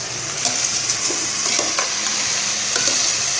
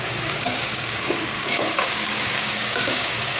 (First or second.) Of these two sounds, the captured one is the first